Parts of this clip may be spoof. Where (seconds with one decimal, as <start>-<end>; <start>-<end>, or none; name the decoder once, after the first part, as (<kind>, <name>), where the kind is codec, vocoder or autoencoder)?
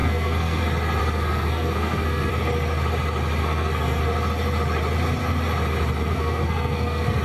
0.0-0.6 (codec, SNAC); 1.0-2.3; 3.4-4.0; 6.1-7.2